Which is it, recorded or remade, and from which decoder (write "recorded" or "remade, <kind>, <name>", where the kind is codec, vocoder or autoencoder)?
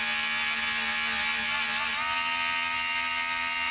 recorded